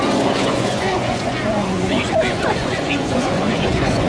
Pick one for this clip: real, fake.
fake